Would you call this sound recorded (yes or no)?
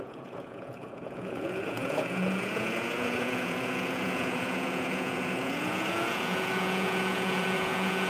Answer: no